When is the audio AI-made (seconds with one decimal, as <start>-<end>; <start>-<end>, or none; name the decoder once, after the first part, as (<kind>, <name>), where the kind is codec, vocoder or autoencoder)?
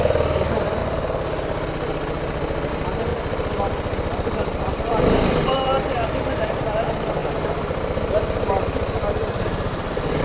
0.0-0.8 (vocoder, BigVGAN v2); 2.7-10.2